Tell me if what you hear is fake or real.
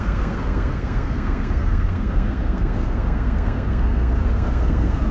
fake